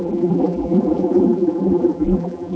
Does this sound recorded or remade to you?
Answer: remade